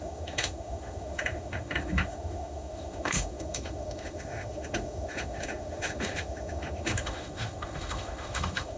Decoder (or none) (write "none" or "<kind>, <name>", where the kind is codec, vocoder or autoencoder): autoencoder, DAC-VAE